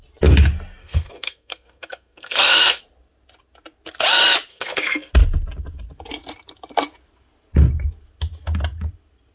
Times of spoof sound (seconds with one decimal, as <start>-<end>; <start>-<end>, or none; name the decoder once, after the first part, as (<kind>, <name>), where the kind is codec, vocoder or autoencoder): 0.8-2.8 (codec, SNAC); 4.5-5.1